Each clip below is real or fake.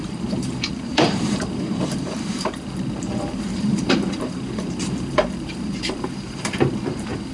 fake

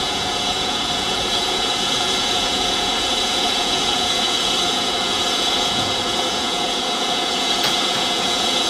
fake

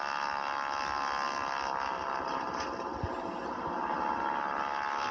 real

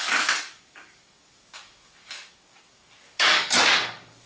fake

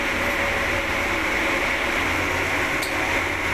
real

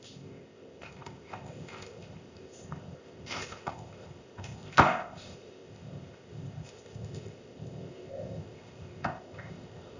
fake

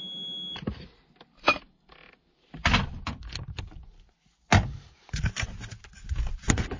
real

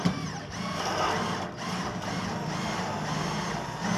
real